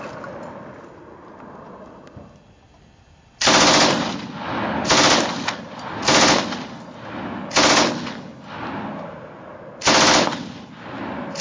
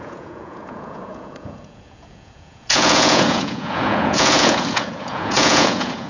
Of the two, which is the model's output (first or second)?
second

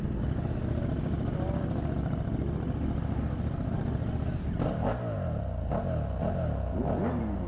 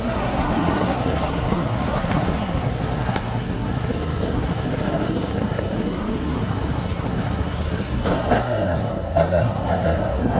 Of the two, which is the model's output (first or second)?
second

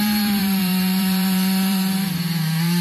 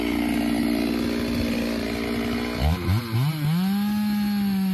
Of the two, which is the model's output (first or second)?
first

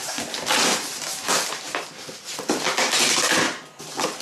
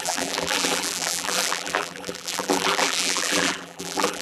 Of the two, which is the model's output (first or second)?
second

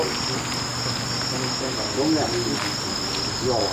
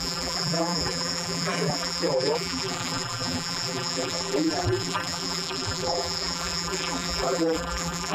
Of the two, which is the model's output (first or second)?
second